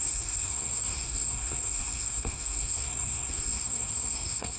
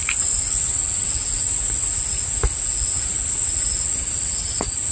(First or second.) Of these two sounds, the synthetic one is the first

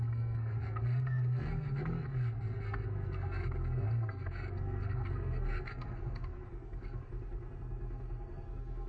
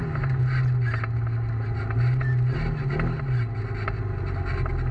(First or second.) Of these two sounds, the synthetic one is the first